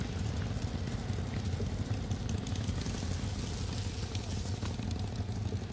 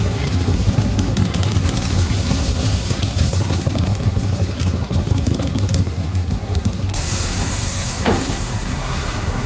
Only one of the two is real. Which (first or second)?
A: first